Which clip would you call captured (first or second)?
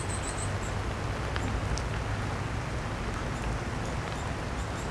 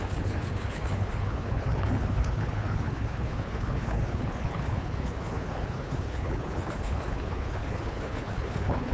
first